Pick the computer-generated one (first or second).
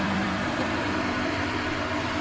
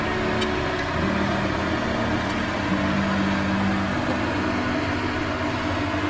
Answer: first